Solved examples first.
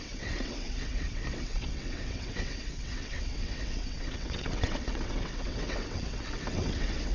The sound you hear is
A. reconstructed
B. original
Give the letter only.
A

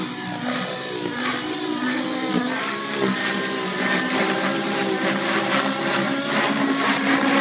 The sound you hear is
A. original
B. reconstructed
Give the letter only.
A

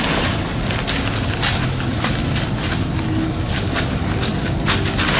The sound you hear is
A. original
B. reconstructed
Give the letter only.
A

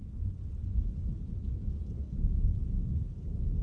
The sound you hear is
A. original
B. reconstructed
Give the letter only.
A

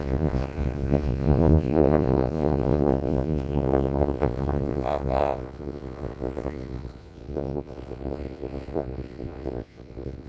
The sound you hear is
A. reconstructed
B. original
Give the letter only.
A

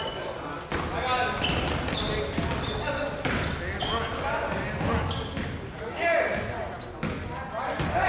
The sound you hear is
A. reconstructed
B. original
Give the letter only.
B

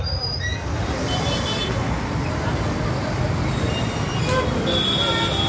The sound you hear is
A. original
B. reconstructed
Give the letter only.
A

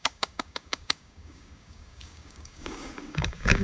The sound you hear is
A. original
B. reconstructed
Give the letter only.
B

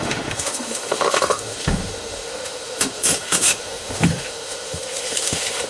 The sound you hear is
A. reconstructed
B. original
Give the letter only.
A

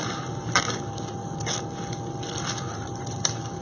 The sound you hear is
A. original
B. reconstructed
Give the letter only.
A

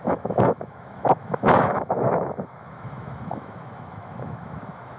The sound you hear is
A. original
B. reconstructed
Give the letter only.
B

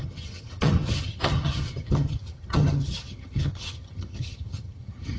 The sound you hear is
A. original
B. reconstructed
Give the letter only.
B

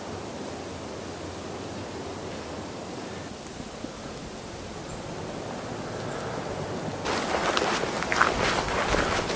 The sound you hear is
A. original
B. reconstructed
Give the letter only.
A